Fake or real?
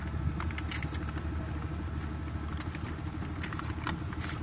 real